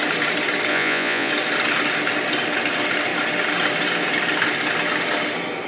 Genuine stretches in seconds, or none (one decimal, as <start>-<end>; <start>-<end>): 0.0-0.7; 1.3-5.7